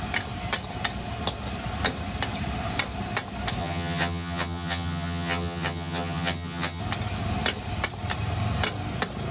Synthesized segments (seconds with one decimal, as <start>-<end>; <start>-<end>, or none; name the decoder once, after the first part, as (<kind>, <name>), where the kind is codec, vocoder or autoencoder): 3.6-6.8 (vocoder, HiFi-GAN)